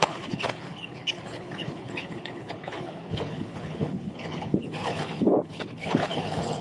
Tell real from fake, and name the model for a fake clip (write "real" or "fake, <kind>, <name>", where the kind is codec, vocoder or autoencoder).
fake, codec, HILCodec